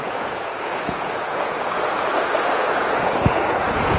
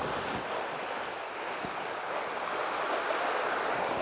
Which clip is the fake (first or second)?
first